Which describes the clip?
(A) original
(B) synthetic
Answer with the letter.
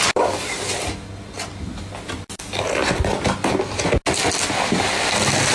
A